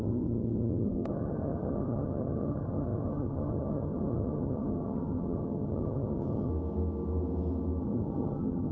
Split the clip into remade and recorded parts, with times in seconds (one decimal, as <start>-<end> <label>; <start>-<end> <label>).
0.0-6.5 remade; 6.5-7.8 recorded; 7.8-8.7 remade